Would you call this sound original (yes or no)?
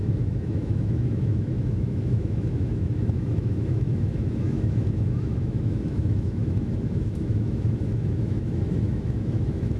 no